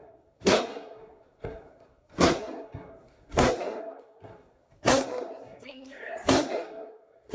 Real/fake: fake